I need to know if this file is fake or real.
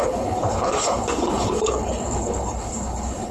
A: fake